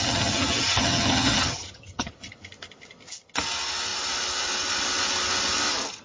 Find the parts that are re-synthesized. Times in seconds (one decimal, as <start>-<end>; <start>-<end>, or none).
0.0-2.1